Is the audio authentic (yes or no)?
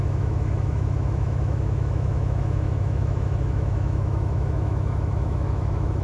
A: no